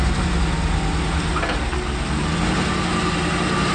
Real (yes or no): yes